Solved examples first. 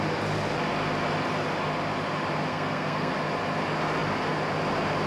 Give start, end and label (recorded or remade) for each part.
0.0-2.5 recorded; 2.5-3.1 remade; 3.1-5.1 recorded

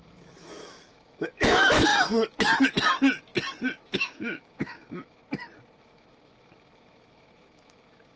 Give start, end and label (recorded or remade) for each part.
0.0-3.3 remade; 3.3-3.9 recorded; 3.9-5.2 remade; 5.2-5.8 recorded; 5.8-8.2 remade

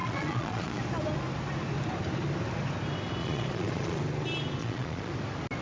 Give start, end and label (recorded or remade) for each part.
0.0-0.8 remade; 0.8-3.2 recorded; 3.2-4.0 remade; 4.0-4.6 recorded; 4.6-5.1 remade; 5.1-5.6 recorded